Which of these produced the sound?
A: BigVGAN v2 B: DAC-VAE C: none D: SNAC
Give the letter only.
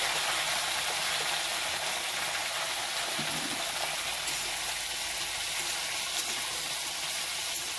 C